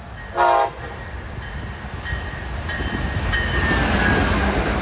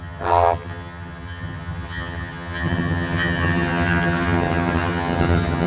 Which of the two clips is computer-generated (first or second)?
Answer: second